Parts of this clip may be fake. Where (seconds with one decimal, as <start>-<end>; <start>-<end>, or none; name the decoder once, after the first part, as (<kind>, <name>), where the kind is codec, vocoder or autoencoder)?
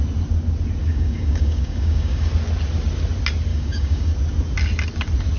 0.8-2.3 (codec, DAC); 3.5-4.1